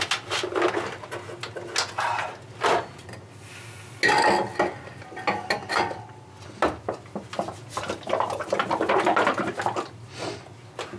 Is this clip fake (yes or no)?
no